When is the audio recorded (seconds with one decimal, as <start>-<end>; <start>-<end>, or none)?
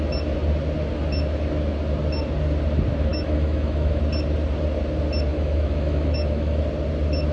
0.0-3.1; 4.0-5.3; 6.6-7.3